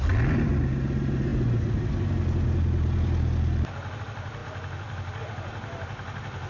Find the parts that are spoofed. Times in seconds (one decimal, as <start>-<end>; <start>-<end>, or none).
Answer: none